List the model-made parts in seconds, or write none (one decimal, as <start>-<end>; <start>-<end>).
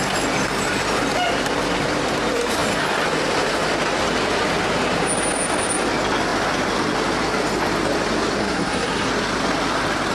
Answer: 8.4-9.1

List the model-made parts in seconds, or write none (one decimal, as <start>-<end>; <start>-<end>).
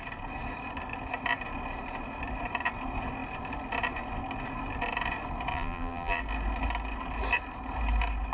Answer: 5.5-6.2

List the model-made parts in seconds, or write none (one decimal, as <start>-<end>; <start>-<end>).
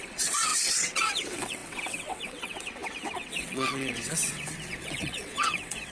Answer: 0.0-5.9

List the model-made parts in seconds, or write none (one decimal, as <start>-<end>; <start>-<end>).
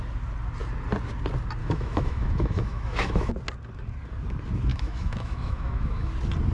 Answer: 1.6-3.3; 4.7-6.1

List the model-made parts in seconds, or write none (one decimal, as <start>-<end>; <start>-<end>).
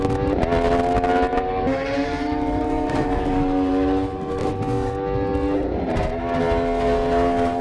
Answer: 1.3-4.5